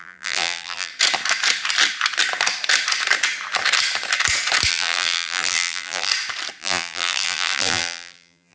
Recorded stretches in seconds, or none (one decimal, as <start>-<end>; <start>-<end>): 0.9-4.7; 6.1-6.6